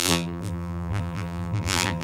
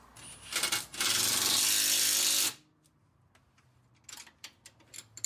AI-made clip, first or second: first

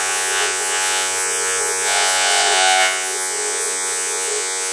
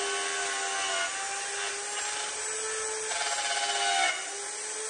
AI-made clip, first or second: first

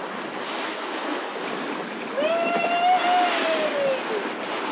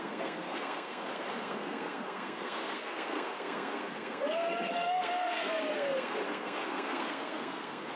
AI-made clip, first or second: second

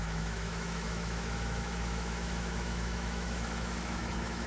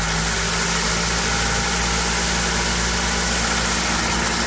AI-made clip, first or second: first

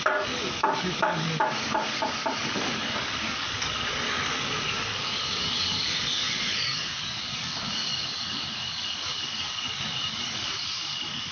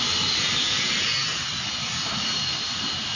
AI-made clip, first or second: first